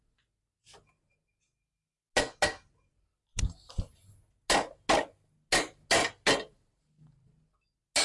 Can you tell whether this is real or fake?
real